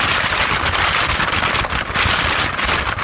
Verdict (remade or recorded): recorded